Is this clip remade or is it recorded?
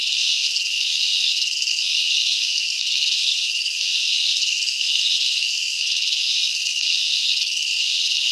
remade